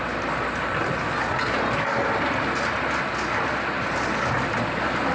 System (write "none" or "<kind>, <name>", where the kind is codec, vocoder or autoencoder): none